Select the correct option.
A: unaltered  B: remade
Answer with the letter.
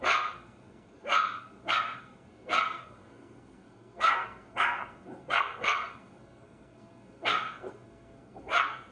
B